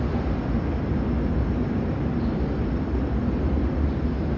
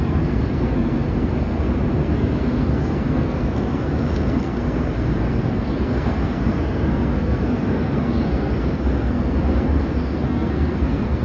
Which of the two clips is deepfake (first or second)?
second